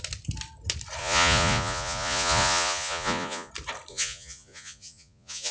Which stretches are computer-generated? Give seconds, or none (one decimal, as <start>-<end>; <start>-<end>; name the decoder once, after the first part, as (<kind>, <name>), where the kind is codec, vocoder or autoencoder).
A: 1.0-3.5 (vocoder, Vocos); 3.9-5.5